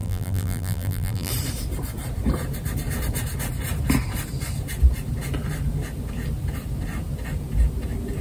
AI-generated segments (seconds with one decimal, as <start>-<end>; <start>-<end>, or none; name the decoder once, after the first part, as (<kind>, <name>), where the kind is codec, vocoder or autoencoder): 0.0-1.3 (vocoder, BigVGAN v2)